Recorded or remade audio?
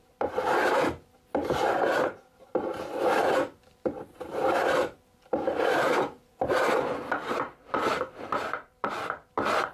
remade